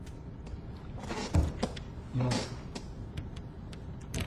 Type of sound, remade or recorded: recorded